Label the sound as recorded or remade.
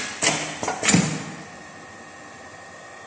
recorded